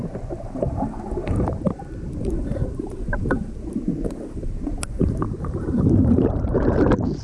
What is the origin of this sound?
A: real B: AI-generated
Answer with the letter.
B